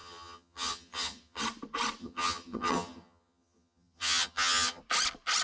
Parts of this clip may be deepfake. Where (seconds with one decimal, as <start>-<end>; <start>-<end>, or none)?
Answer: 0.0-1.4; 2.0-4.8